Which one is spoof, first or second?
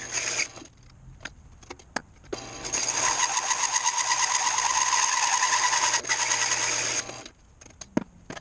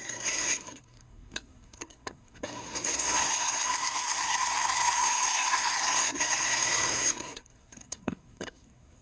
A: second